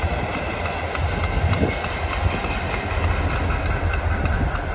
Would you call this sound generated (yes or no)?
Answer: no